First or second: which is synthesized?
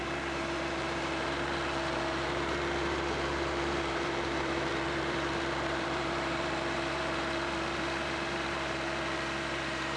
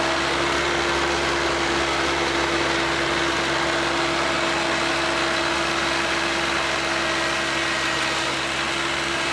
first